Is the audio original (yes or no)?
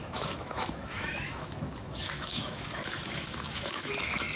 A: no